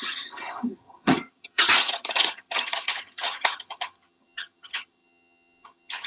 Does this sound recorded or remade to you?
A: remade